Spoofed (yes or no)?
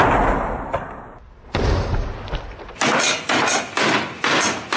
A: no